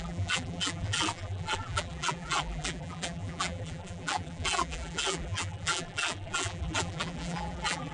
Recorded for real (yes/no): no